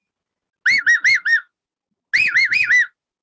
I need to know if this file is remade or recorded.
recorded